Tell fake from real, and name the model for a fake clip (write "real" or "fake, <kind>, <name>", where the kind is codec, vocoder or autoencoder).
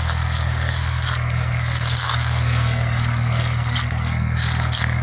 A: fake, codec, SNAC